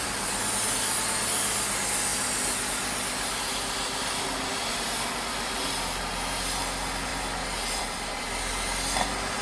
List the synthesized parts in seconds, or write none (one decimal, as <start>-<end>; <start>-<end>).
none